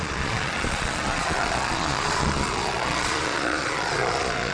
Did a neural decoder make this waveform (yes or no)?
yes